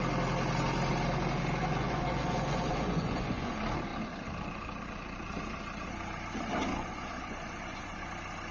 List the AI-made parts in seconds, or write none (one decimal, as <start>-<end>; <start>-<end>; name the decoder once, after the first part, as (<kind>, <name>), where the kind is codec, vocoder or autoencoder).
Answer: 1.6-3.5 (vocoder, Vocos); 6.7-8.1